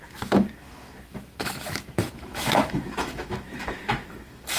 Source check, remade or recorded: remade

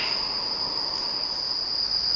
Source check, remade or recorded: recorded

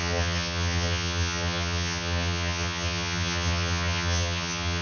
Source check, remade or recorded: remade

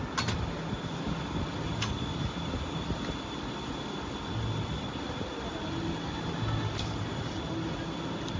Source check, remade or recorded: recorded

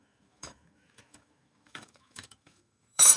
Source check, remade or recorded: remade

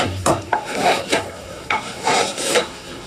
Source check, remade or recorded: remade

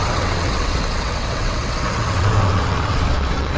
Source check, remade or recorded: remade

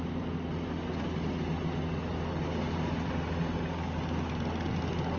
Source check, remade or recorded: recorded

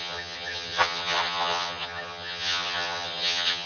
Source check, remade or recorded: remade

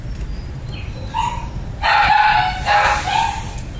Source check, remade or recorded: recorded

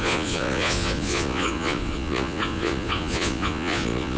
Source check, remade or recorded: remade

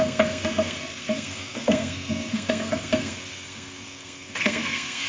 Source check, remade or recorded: remade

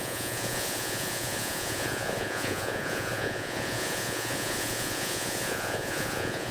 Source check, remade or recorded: remade